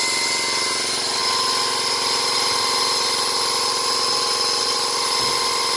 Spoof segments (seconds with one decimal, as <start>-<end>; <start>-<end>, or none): none